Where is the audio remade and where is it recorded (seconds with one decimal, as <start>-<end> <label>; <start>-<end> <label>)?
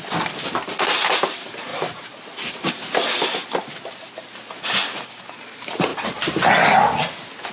0.0-7.5 recorded